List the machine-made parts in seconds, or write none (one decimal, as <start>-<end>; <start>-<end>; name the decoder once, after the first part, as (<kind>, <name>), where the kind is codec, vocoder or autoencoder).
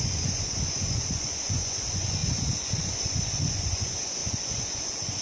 0.0-5.2 (vocoder, Vocos)